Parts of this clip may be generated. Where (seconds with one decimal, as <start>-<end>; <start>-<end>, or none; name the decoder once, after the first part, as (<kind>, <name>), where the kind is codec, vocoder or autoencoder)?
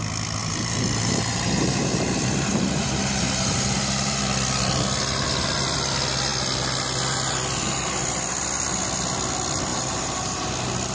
0.4-4.2 (vocoder, BigVGAN v2); 9.7-10.5